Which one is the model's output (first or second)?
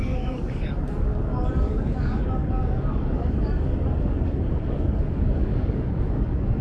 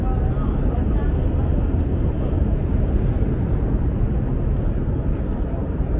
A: first